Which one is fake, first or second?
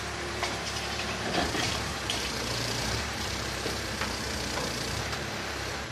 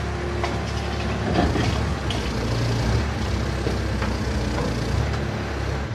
first